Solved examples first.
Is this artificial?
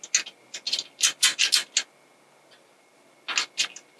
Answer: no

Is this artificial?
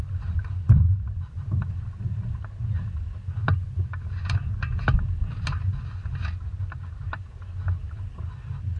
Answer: no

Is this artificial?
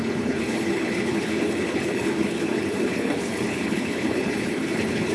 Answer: yes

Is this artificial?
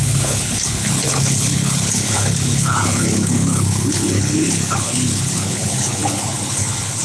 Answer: yes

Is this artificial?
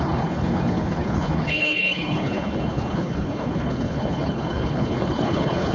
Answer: yes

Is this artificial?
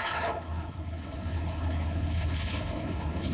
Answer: yes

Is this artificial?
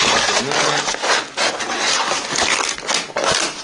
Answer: no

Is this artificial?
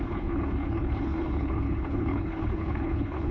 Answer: yes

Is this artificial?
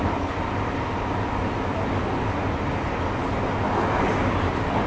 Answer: no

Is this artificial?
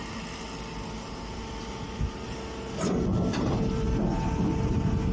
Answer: no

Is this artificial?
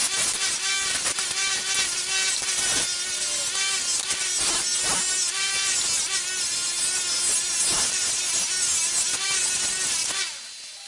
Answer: no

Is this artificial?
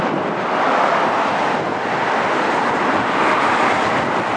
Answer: no